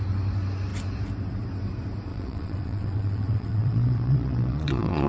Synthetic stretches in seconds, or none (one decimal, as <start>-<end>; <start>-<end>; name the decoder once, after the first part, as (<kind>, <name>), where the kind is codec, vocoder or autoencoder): 2.1-5.1 (vocoder, WaveNeXt)